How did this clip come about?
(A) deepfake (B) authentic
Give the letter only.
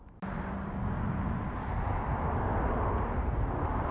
B